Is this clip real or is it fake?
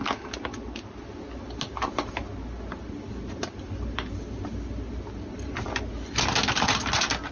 real